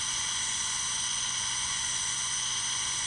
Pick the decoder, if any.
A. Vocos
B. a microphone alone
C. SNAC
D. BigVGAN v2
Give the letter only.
A